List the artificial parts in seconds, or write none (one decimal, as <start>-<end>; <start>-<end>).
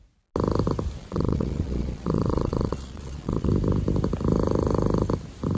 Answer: 1.0-3.5